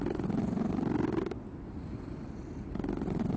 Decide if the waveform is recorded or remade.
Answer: recorded